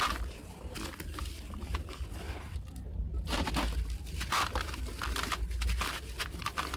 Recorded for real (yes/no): yes